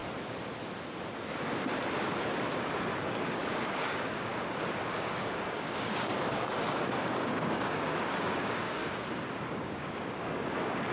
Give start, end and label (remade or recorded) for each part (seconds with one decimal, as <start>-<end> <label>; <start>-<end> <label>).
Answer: 0.0-3.1 recorded; 3.1-4.3 remade; 4.3-5.0 recorded; 5.0-8.8 remade; 8.8-9.5 recorded; 9.5-10.9 remade